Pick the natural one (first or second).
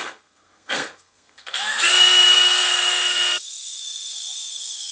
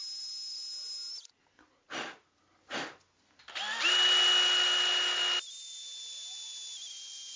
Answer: second